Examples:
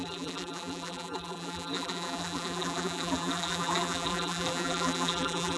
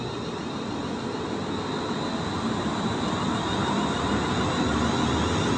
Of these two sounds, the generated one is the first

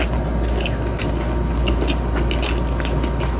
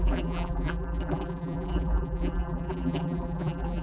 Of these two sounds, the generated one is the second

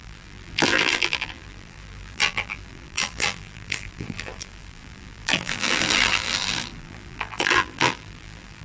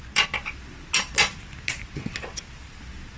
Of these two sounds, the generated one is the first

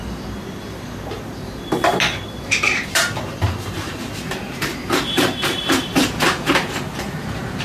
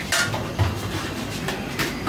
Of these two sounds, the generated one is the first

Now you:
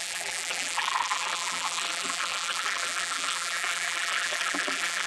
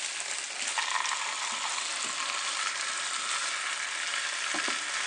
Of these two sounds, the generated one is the first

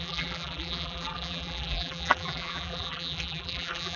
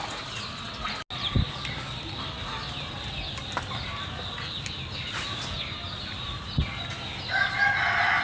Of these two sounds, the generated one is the first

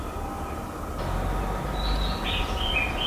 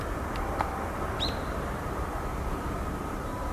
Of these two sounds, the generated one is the second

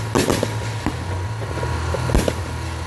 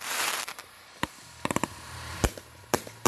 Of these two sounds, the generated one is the second